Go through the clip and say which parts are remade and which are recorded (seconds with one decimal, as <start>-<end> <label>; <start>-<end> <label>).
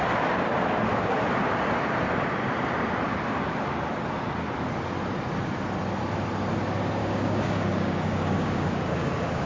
0.0-7.0 recorded; 7.0-9.5 remade